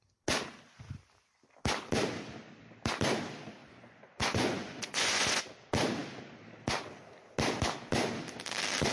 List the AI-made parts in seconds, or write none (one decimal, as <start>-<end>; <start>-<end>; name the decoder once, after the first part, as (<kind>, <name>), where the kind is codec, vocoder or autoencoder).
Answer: 3.6-5.4 (vocoder, Vocos)